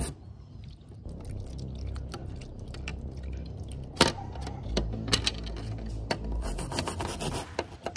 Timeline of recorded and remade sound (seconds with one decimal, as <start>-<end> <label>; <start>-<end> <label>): 0.0-8.0 recorded

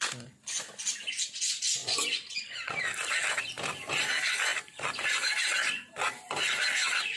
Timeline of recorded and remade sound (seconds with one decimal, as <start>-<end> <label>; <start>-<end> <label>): 0.0-1.8 recorded; 1.8-2.8 remade; 2.8-7.2 recorded

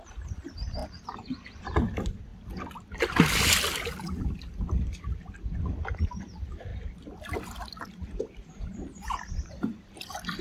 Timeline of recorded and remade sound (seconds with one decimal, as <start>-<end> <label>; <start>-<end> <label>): 0.0-10.4 recorded